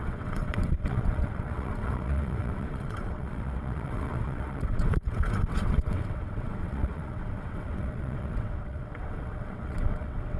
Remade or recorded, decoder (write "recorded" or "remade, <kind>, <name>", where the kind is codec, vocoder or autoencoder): remade, vocoder, WaveNeXt